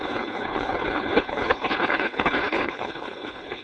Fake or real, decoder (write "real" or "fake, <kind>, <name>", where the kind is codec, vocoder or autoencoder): fake, codec, HILCodec